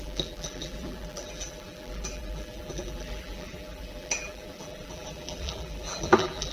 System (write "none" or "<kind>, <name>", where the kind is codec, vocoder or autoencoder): vocoder, BigVGAN v2